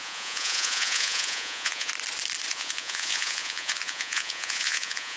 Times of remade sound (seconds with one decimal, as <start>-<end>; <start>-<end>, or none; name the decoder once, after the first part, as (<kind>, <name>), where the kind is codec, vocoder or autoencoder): 0.0-1.9 (vocoder, Vocos); 2.5-5.2